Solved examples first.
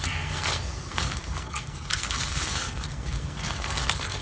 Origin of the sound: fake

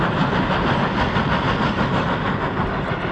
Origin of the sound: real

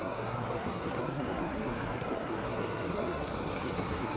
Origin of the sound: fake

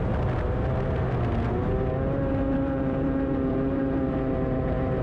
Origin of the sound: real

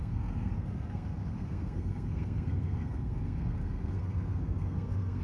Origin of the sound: fake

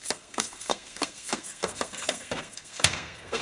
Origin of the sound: fake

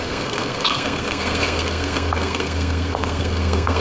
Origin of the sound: fake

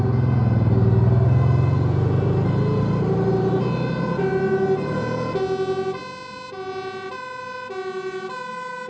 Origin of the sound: real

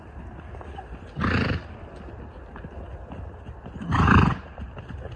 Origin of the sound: real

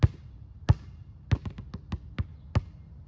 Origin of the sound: real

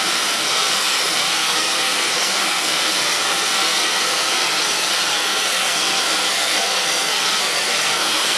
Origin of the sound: fake